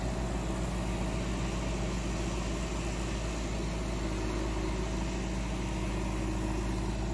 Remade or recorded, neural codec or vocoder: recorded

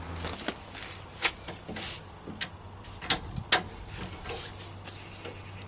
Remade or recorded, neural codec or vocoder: recorded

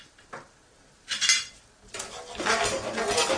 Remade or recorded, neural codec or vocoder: recorded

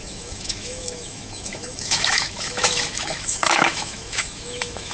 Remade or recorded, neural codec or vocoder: remade, autoencoder, DAC-VAE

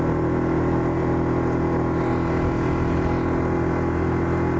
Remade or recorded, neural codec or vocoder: recorded